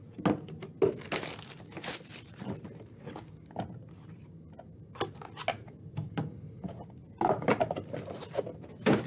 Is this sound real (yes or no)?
yes